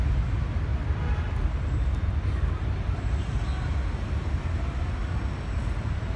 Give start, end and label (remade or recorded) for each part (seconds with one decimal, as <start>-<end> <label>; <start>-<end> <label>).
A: 0.0-6.2 recorded